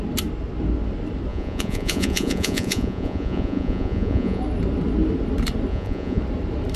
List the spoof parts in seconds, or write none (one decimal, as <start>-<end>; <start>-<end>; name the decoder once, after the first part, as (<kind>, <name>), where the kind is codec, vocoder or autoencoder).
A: 1.3-4.4 (vocoder, Vocos); 5.7-6.2